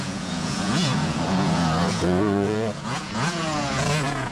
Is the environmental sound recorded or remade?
remade